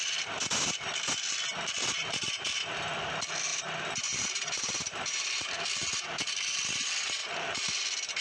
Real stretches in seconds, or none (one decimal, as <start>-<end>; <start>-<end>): 0.0-3.5; 5.5-7.2; 7.7-8.2